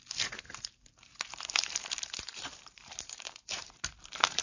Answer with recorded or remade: remade